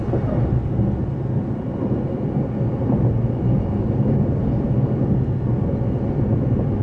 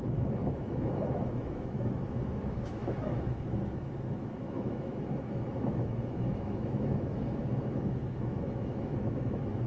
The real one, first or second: first